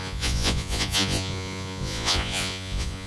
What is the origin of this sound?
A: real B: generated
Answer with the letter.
B